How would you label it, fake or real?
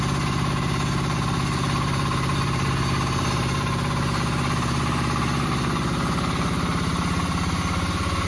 fake